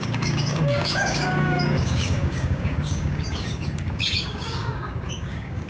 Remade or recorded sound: remade